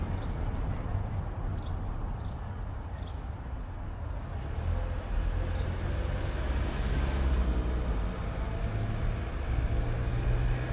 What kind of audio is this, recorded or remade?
recorded